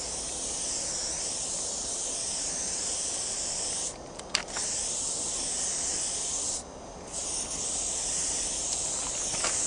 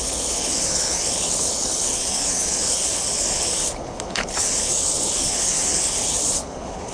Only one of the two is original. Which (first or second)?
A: first